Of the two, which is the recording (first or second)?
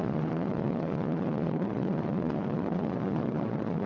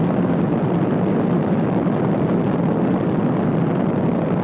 second